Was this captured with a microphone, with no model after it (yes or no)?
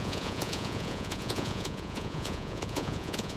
no